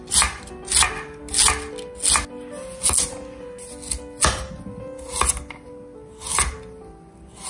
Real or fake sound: real